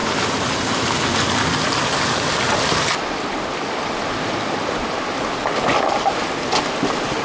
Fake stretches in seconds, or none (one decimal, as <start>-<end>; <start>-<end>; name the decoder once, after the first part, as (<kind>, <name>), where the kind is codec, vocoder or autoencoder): none